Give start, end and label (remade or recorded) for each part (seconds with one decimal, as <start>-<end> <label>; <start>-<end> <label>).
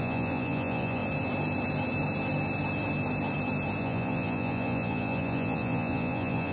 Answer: 0.0-1.0 remade; 1.0-3.8 recorded; 3.8-6.5 remade